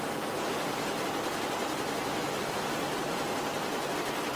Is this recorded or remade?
recorded